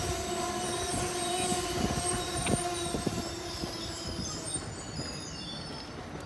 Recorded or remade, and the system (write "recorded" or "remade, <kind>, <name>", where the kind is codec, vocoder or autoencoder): recorded